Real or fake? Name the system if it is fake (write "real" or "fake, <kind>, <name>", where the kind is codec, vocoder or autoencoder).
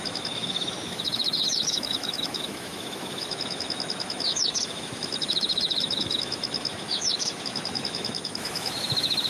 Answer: fake, autoencoder, DAC-VAE